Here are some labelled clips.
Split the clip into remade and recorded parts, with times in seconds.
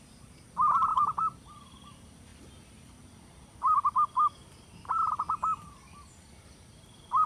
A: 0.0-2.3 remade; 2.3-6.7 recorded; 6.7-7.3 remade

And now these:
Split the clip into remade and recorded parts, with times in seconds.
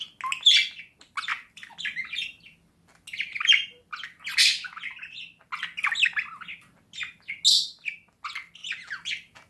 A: 0.0-1.3 recorded; 1.3-2.7 remade; 2.7-9.5 recorded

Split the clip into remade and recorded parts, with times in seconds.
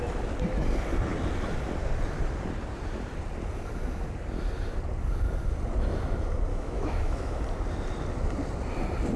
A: 0.0-6.5 recorded; 6.5-7.4 remade; 7.4-9.2 recorded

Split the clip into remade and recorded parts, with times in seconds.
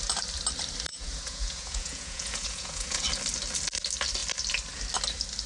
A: 0.0-0.9 recorded; 0.9-3.0 remade; 3.0-5.5 recorded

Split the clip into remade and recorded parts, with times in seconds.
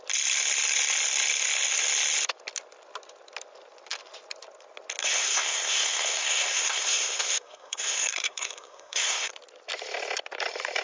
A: 0.0-5.0 recorded; 5.0-9.3 remade; 9.3-10.8 recorded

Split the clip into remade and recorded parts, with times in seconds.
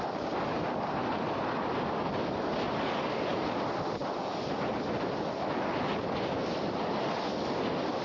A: 0.0-1.0 recorded; 1.0-2.1 remade; 2.1-8.0 recorded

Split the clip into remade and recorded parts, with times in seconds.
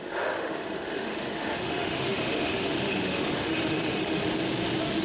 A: 0.0-4.2 remade; 4.2-5.0 recorded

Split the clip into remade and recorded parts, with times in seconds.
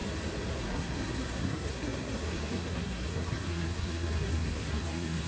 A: 0.0-0.6 recorded; 0.6-5.3 remade